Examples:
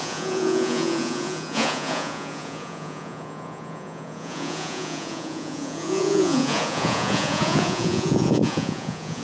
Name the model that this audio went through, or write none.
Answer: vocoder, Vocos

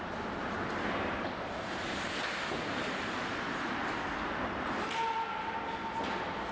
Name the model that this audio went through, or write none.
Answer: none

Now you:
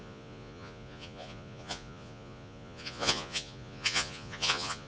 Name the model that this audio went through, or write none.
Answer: vocoder, Vocos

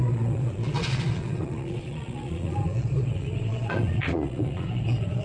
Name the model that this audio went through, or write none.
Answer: vocoder, Vocos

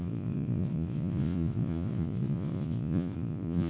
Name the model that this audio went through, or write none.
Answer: vocoder, Vocos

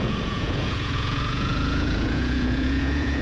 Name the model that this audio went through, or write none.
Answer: vocoder, Vocos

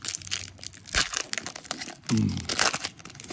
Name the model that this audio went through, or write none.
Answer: none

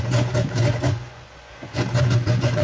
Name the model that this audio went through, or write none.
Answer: vocoder, Vocos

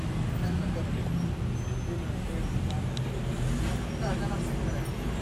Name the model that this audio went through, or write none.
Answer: none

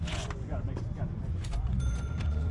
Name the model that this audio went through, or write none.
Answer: vocoder, Vocos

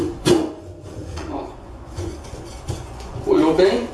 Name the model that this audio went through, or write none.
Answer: vocoder, Vocos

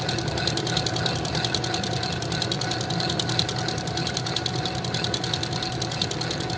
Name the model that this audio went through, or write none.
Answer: none